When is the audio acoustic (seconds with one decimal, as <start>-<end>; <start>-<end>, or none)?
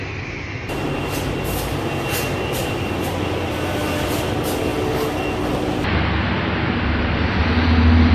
0.0-8.1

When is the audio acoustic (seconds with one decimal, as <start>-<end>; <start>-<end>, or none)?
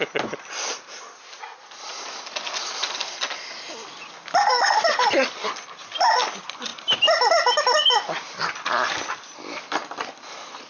0.0-6.7; 7.8-10.7